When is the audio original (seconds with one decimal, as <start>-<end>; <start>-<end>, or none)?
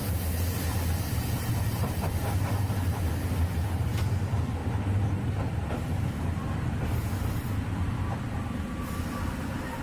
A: 0.0-1.1; 4.6-8.9